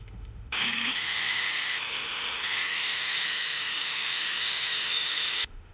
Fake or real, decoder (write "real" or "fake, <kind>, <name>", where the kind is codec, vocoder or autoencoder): fake, autoencoder, DAC-VAE